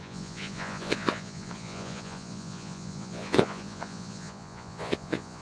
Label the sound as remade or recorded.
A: remade